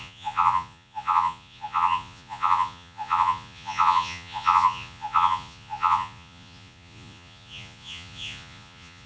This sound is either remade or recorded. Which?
remade